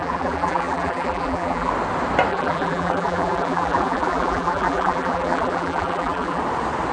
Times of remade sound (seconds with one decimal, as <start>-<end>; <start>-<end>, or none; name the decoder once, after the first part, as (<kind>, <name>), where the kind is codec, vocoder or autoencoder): 0.0-1.7 (vocoder, BigVGAN v2); 2.3-6.4